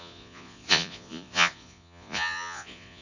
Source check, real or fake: fake